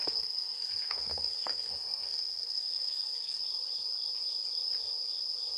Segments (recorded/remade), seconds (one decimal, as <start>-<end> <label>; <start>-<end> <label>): 0.0-3.4 remade; 3.4-5.6 recorded